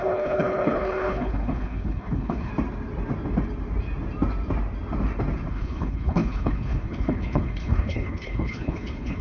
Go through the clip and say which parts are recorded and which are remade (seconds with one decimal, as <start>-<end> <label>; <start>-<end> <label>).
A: 0.0-2.5 remade; 2.5-5.5 recorded; 5.5-9.2 remade